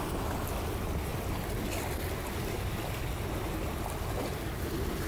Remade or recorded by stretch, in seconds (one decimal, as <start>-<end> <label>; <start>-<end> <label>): 0.0-5.1 recorded